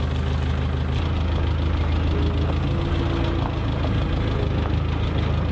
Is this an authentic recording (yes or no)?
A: yes